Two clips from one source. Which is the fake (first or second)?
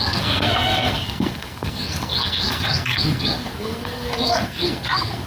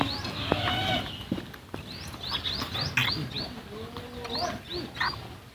first